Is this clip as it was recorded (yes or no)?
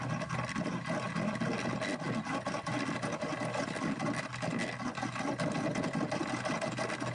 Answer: yes